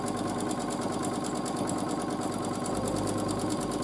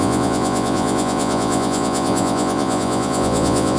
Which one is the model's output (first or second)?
second